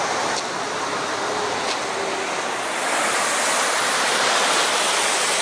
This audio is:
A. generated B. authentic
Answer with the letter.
B